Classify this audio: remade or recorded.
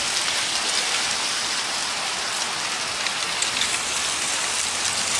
recorded